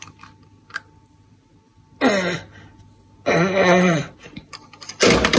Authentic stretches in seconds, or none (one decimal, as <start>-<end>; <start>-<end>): 0.0-5.4